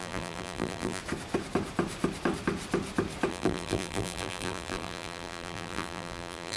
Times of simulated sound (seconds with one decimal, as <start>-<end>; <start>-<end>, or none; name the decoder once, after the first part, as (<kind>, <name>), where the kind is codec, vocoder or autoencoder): 0.0-1.0 (vocoder, BigVGAN v2); 3.3-6.6